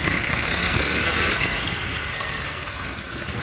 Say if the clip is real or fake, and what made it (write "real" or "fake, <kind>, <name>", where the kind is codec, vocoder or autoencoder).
fake, codec, SNAC